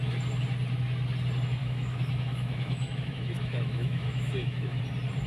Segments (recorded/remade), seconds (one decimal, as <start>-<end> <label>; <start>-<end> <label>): 0.0-1.6 recorded; 1.6-4.8 remade; 4.8-5.3 recorded